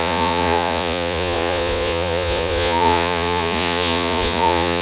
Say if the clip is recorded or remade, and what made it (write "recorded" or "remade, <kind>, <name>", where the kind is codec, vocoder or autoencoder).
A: remade, vocoder, Vocos